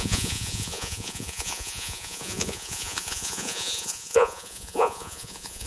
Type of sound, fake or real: fake